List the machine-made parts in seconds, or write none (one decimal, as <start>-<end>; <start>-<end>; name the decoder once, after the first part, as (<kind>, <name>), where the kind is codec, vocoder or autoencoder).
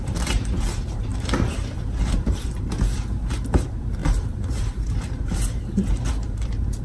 0.0-1.1 (vocoder, BigVGAN v2); 1.8-6.8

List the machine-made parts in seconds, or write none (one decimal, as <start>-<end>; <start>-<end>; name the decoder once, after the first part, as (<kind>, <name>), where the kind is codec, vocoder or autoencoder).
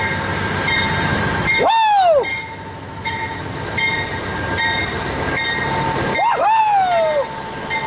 1.1-1.7 (autoencoder, DAC-VAE); 2.3-3.4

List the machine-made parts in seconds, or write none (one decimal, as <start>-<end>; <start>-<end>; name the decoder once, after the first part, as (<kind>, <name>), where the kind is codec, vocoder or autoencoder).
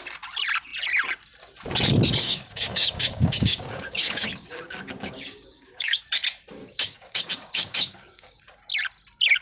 2.2-6.0 (codec, DAC); 6.6-8.4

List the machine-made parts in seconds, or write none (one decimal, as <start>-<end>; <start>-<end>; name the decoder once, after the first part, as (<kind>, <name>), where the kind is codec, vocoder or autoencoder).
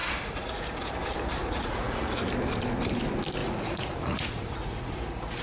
0.0-0.9 (vocoder, Vocos); 1.4-2.2; 3.4-5.4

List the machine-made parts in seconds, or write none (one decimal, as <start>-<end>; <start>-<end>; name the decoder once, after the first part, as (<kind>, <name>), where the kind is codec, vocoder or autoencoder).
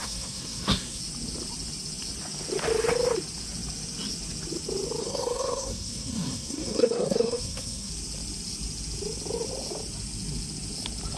0.0-1.0 (codec, SNAC); 5.0-7.9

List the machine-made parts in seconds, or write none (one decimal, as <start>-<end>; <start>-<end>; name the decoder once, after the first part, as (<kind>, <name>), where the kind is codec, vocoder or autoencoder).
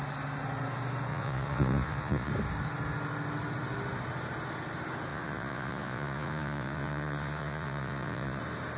1.1-2.3 (vocoder, Vocos); 5.1-8.4